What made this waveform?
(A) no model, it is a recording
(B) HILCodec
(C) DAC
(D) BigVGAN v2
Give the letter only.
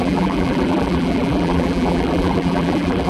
D